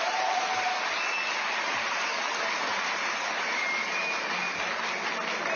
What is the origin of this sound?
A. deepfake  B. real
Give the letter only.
B